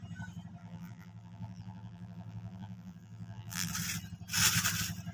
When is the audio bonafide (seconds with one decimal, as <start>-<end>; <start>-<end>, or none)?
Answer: 0.0-0.6; 3.7-5.1